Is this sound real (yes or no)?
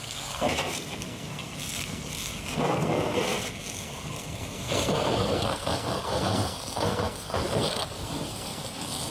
no